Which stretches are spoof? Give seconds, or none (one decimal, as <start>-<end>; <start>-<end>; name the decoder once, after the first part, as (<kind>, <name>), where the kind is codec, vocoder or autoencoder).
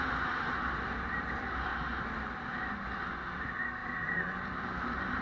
0.0-1.7 (vocoder, BigVGAN v2); 3.4-5.2